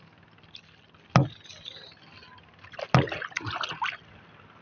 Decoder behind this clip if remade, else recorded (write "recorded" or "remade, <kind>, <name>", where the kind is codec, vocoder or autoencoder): recorded